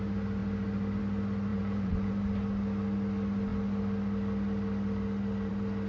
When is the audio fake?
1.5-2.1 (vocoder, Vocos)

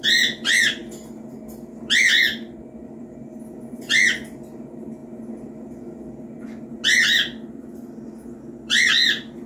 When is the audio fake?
none

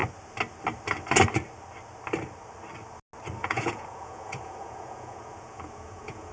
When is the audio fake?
3.4-6.3 (vocoder, Vocos)